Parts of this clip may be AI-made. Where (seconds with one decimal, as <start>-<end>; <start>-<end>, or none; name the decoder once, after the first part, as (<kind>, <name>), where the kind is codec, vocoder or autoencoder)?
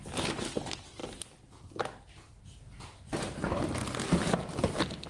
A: none